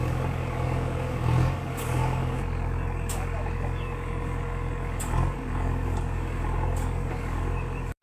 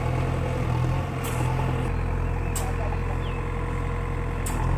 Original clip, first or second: second